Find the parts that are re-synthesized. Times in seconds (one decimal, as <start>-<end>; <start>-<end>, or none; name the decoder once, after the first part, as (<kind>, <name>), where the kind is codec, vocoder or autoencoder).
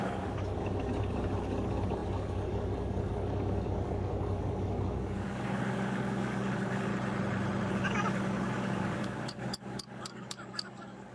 0.0-6.9 (codec, DAC); 7.7-11.1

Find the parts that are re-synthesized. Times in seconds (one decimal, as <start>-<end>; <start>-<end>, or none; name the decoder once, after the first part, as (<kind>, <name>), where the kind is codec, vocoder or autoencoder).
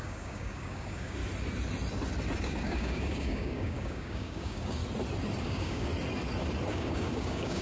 0.0-1.2 (codec, DAC); 2.4-4.8; 5.4-5.9; 6.7-7.6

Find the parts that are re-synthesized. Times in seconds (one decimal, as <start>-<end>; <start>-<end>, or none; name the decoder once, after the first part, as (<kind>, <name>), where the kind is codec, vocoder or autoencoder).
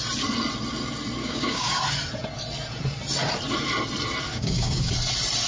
1.2-1.8 (codec, DAC); 4.3-4.9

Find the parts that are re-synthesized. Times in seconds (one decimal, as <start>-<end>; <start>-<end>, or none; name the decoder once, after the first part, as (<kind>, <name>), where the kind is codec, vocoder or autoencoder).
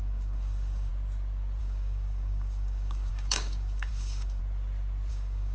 0.0-0.9 (codec, DAC); 1.6-4.4; 5.1-5.5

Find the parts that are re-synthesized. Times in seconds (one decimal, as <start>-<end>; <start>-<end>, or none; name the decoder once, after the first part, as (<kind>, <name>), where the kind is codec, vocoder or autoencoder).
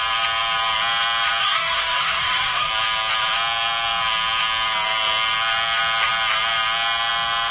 1.4-2.7 (codec, DAC)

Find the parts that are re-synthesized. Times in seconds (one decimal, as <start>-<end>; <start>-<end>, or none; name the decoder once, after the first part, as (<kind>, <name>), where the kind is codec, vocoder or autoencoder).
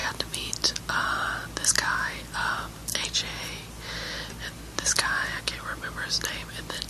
none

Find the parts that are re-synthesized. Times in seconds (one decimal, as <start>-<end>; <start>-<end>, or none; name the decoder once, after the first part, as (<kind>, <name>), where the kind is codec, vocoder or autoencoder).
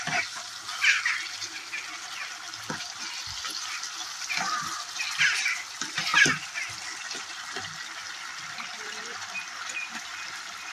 none